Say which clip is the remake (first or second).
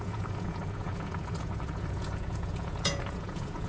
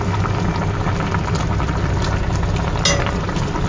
first